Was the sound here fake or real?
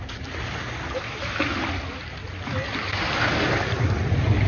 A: real